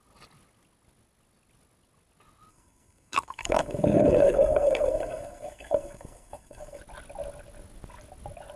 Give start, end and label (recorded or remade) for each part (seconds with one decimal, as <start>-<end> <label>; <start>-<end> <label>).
0.0-2.5 recorded; 2.5-6.8 remade; 6.8-8.6 recorded